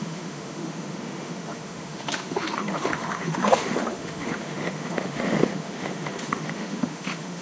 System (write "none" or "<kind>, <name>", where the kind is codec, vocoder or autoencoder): autoencoder, DAC-VAE